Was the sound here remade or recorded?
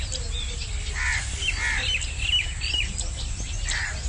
recorded